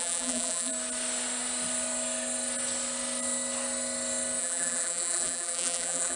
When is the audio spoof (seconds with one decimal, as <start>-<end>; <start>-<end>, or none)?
0.0-0.7; 4.4-6.2